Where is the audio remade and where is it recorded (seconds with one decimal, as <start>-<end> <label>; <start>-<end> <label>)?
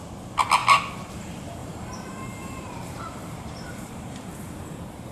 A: 0.0-1.6 recorded; 1.6-4.3 remade; 4.3-5.1 recorded